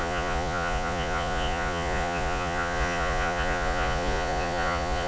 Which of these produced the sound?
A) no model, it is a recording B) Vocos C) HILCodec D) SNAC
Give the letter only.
B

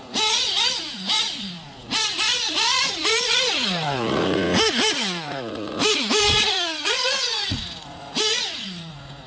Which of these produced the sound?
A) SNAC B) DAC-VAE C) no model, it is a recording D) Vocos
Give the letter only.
D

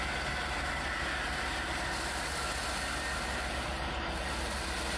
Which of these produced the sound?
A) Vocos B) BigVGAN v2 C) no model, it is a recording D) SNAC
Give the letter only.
C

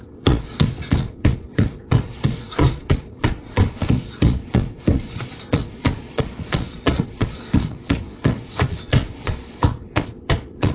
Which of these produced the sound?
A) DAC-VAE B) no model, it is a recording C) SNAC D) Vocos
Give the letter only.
D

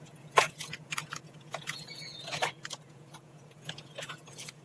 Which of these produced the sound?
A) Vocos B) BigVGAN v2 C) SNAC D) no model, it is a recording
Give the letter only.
A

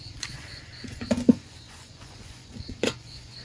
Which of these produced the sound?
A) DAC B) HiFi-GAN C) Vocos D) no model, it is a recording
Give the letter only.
C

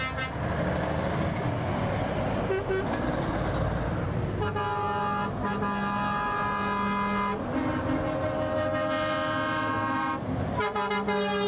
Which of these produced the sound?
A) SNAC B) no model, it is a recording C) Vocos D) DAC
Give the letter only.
B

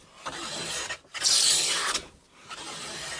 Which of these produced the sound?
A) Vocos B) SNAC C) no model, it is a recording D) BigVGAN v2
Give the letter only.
C